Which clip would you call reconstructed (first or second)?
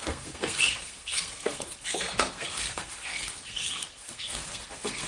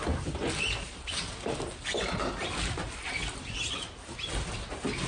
first